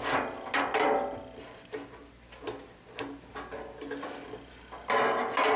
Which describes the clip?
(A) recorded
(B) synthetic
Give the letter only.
A